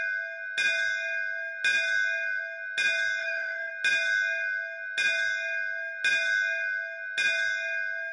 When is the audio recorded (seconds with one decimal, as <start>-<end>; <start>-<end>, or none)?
0.0-3.2; 3.7-8.1